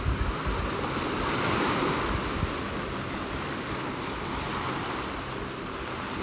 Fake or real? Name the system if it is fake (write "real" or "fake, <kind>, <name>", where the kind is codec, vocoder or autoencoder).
real